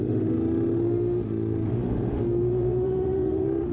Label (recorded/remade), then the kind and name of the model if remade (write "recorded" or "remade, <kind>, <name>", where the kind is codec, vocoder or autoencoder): remade, autoencoder, DAC-VAE